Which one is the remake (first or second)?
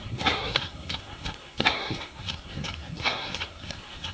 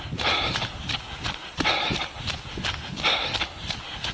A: first